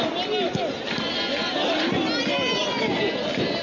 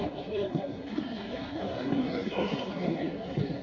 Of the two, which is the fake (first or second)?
second